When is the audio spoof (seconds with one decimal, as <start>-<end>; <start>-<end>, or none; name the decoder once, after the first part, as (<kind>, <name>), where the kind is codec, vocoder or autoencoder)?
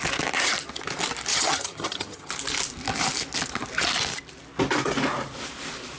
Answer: 1.3-2.3 (vocoder, HiFi-GAN)